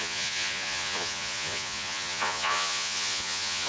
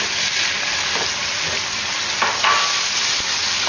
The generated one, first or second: first